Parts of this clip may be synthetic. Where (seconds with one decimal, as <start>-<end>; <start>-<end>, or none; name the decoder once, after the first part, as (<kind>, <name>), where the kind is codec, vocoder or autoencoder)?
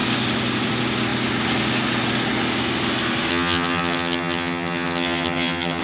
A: 3.3-5.8 (vocoder, HiFi-GAN)